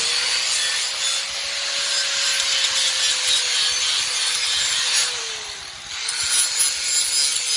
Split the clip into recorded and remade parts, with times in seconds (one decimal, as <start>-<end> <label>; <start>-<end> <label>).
0.0-3.5 recorded; 3.5-5.7 remade; 5.7-7.6 recorded